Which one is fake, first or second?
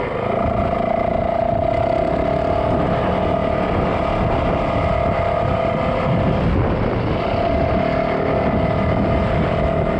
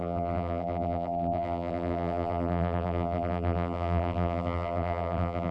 second